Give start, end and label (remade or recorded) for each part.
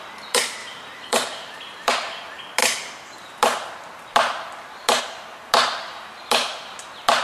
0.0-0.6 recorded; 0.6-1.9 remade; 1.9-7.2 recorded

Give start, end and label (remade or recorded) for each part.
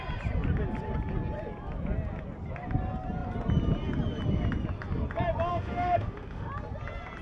0.0-5.5 recorded; 5.5-6.5 remade; 6.5-7.2 recorded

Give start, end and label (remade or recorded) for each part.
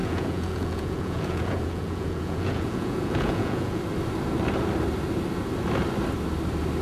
0.0-3.8 remade; 3.8-6.8 recorded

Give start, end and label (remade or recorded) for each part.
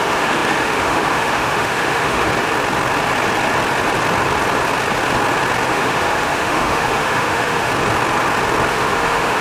0.0-2.3 remade; 2.3-5.7 recorded; 5.7-7.7 remade; 7.7-8.7 recorded; 8.7-9.4 remade